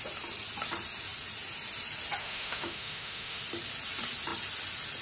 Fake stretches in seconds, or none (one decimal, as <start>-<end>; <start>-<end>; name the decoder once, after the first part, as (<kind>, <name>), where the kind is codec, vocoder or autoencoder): 2.2-3.4 (autoencoder, DAC-VAE)